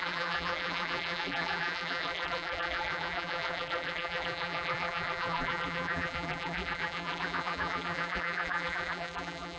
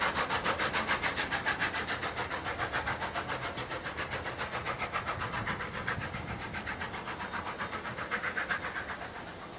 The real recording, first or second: second